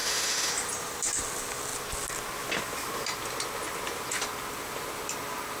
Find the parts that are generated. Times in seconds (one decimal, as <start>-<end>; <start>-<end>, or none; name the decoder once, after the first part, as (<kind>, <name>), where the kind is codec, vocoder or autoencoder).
0.0-0.5 (autoencoder, DAC-VAE)

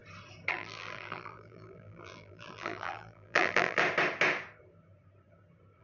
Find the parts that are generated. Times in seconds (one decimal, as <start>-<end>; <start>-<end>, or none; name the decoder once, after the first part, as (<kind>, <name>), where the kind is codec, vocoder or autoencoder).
0.5-3.8 (vocoder, BigVGAN v2)

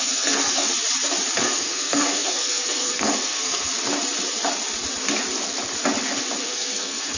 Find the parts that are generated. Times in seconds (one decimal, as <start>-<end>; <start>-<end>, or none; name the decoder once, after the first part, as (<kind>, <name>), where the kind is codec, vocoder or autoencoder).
0.0-0.7 (codec, SNAC); 1.4-3.7; 6.4-7.2

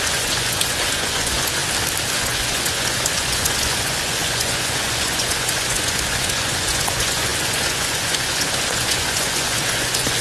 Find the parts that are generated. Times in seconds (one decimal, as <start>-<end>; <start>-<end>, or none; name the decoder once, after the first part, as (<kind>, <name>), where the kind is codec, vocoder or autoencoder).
0.0-1.6 (vocoder, Vocos); 2.1-10.2

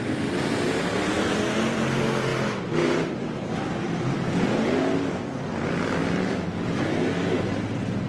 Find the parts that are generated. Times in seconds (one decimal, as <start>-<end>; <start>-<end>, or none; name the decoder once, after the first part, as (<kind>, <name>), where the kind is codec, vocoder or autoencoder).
none

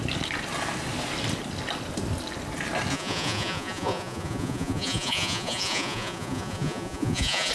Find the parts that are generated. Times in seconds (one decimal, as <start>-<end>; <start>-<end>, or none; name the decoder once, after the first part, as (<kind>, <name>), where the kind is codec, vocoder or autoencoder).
2.9-7.5 (vocoder, Vocos)

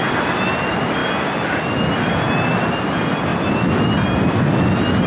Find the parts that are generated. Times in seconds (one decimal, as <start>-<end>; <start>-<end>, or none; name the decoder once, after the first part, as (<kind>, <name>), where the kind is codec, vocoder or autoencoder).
none